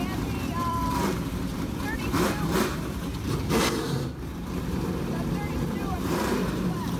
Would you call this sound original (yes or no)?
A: no